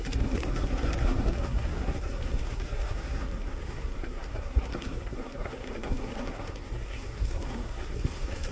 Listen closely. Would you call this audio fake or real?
fake